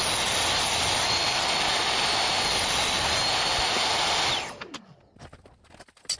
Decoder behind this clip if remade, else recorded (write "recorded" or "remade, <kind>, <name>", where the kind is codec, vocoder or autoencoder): recorded